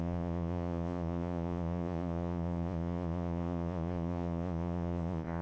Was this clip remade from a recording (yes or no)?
yes